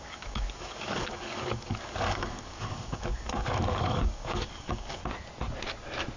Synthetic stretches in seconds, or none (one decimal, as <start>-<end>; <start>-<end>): 0.0-5.0